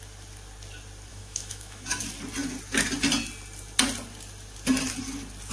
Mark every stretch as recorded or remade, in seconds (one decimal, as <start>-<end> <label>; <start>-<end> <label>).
0.0-1.1 recorded; 1.1-2.0 remade; 2.0-5.5 recorded